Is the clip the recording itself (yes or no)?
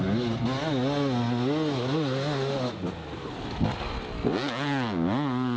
yes